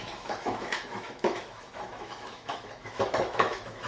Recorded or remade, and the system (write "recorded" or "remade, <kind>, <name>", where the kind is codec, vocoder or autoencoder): remade, autoencoder, DAC-VAE